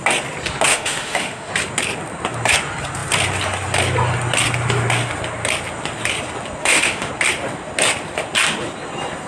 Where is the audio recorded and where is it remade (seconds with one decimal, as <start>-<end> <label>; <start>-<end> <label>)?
0.0-0.7 recorded; 0.7-1.5 remade; 1.5-6.6 recorded; 6.6-7.1 remade; 7.1-9.3 recorded